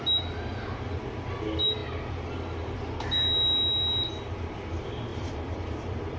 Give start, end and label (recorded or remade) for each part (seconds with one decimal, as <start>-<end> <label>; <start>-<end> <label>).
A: 0.0-5.1 recorded; 5.1-6.2 remade